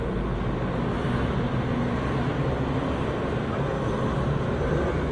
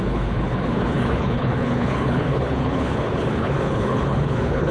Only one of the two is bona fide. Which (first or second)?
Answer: first